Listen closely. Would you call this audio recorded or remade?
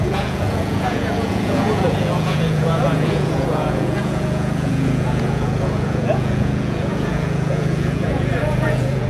remade